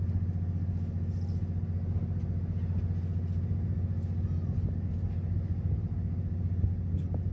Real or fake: real